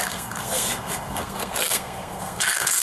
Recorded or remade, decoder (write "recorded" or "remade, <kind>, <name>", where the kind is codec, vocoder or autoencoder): remade, codec, SNAC